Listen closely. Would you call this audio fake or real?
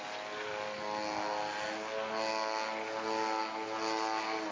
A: real